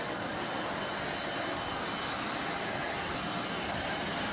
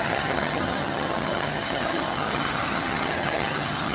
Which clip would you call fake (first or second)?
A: second